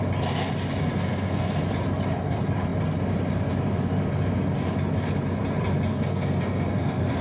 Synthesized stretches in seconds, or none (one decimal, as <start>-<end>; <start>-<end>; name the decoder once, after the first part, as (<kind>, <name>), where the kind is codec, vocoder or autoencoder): 0.8-1.6 (codec, SNAC); 5.9-7.2